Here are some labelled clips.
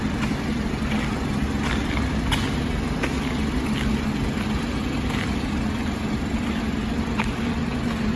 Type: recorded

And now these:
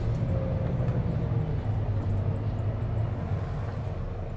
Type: recorded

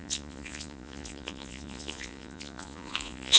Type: remade